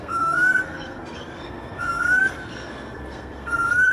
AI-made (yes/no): yes